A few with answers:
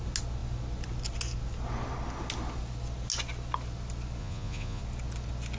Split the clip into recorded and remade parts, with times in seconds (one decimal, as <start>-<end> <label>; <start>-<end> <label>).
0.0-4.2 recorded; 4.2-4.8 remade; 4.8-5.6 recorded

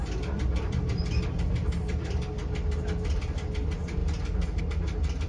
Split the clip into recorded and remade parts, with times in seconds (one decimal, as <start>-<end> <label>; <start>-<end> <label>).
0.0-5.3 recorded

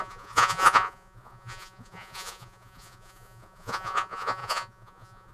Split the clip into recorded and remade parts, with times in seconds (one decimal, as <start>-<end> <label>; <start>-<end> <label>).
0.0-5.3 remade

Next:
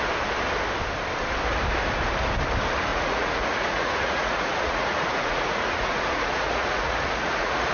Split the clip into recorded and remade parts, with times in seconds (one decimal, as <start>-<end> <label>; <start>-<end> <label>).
0.0-2.9 recorded; 2.9-7.7 remade